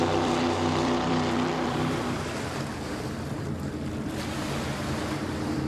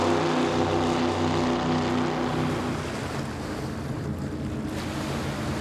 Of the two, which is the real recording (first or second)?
second